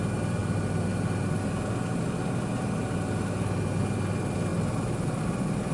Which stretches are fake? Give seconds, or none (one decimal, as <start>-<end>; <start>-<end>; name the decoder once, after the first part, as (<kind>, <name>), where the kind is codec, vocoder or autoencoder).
4.5-5.7 (vocoder, BigVGAN v2)